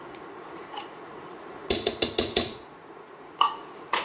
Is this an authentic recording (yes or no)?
no